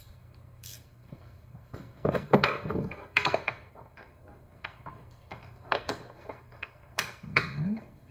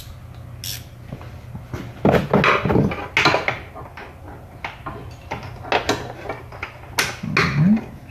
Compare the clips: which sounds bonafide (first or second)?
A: second